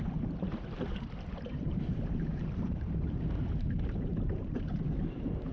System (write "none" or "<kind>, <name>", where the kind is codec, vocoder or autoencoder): vocoder, BigVGAN v2